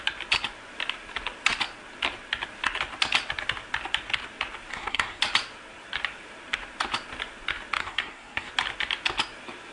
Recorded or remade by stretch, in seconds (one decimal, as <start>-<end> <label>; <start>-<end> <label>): 0.0-4.7 recorded; 4.7-5.2 remade; 5.2-7.8 recorded; 7.8-8.5 remade; 8.5-9.7 recorded